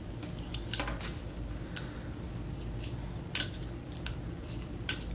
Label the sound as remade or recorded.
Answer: recorded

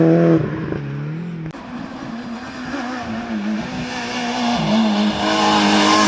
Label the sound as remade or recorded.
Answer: recorded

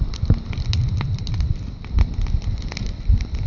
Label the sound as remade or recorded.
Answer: remade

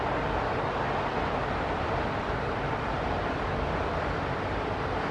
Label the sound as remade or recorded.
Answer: remade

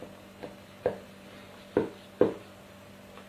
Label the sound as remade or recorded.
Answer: recorded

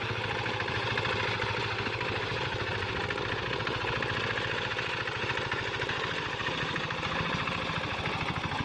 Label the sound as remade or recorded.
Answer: recorded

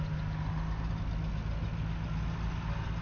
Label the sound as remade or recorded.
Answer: recorded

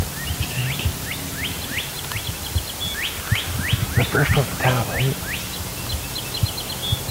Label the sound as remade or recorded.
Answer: recorded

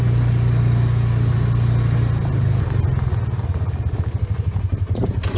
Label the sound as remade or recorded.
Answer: recorded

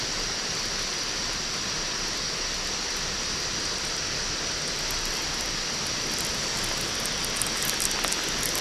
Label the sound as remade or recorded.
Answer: recorded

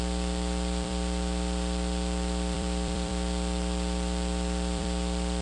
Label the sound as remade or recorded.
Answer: remade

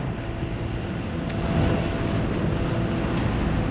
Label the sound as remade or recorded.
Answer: recorded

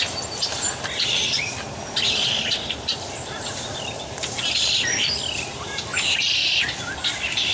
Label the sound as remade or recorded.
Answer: recorded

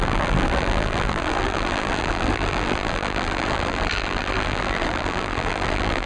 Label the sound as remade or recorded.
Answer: remade